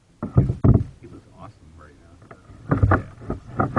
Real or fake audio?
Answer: real